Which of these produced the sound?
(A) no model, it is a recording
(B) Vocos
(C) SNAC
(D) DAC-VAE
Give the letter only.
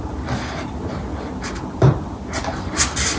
A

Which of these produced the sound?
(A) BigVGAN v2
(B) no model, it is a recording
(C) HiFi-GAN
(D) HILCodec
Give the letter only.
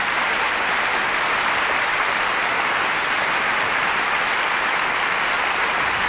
B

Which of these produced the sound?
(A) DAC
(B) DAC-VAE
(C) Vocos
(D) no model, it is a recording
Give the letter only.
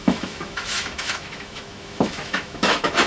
B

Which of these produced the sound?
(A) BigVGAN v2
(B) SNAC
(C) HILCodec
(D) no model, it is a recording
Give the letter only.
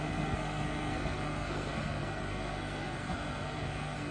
B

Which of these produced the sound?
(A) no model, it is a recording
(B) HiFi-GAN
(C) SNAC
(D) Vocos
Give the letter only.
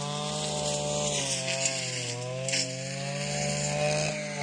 A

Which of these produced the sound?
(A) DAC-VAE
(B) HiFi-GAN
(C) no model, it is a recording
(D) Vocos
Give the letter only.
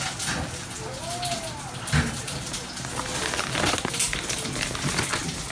C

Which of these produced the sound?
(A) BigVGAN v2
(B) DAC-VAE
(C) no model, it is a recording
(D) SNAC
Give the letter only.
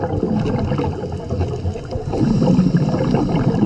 C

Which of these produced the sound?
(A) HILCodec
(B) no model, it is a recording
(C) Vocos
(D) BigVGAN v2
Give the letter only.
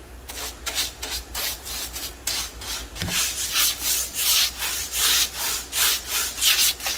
B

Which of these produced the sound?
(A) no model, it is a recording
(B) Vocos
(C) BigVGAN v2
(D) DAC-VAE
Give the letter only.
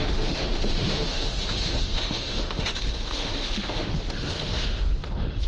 D